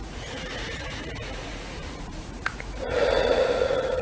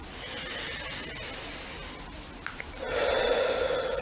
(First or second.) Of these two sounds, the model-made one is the first